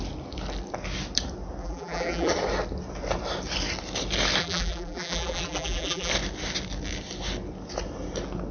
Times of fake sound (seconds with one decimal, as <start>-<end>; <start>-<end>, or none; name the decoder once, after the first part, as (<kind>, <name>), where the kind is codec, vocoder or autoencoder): 1.6-2.3 (vocoder, BigVGAN v2); 4.4-6.1